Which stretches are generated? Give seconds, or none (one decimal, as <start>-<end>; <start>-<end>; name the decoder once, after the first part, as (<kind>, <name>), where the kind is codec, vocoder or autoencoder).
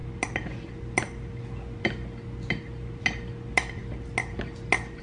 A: none